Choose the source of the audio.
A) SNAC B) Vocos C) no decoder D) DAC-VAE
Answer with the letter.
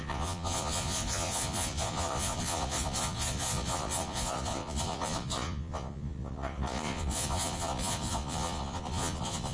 B